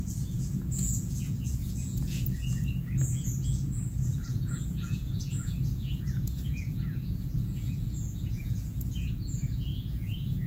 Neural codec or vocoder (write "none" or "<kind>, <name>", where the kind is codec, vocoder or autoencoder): vocoder, Vocos